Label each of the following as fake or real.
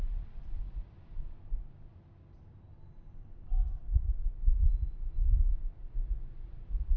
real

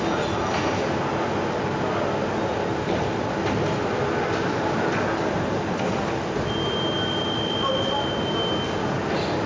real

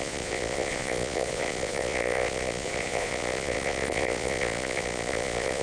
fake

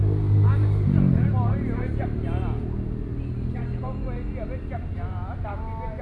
real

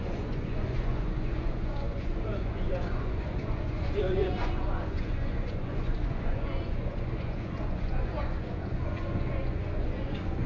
fake